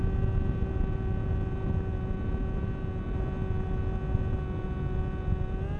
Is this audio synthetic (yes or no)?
no